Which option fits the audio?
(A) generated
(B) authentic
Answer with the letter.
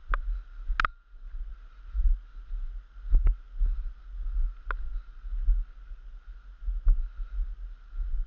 B